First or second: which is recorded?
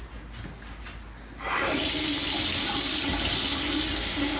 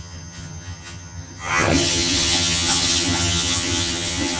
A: first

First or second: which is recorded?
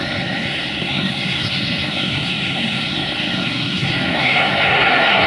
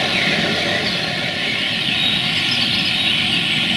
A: second